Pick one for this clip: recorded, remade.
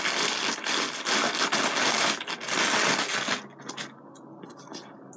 recorded